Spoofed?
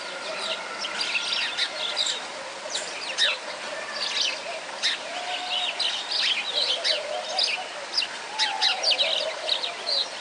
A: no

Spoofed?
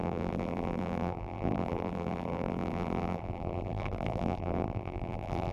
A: yes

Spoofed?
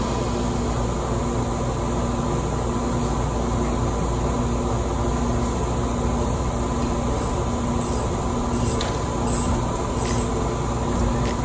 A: no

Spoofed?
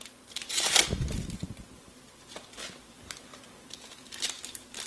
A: no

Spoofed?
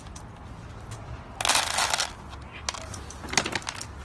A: no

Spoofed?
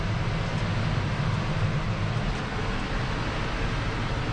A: no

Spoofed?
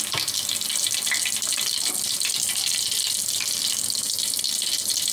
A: no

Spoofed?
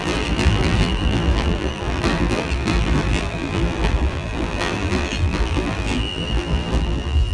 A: yes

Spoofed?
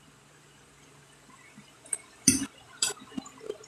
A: yes